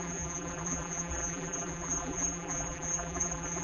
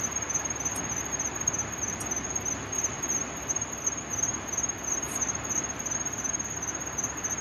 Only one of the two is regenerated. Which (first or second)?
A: first